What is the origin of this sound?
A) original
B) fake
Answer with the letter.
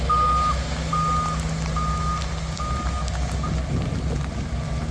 A